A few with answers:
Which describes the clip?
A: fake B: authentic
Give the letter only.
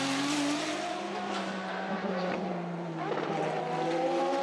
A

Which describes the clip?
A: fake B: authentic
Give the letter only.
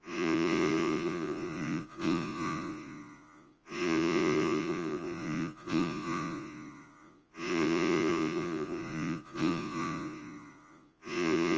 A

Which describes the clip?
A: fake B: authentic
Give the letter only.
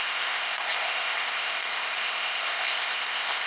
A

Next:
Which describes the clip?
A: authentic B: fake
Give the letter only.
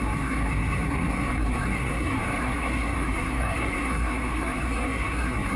B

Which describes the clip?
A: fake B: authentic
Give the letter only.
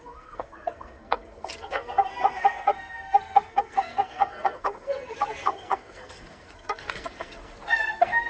A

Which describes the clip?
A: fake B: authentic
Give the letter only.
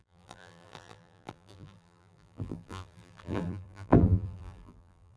A